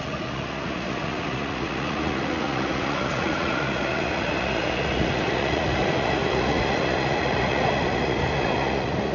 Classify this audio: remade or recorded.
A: remade